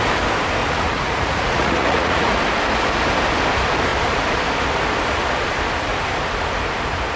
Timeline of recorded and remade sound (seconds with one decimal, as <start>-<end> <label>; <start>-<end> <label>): 0.0-0.6 recorded; 0.6-2.4 remade; 2.4-7.2 recorded